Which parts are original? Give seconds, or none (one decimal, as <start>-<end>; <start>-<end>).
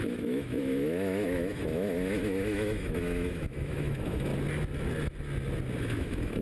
4.3-5.8